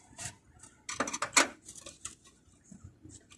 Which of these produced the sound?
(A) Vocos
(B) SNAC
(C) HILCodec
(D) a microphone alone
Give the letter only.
D